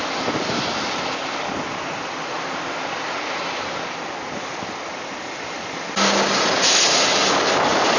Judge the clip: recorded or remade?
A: recorded